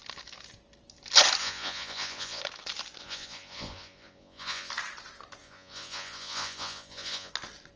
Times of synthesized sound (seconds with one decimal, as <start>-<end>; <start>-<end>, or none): 1.4-2.4; 3.0-4.7; 5.4-7.3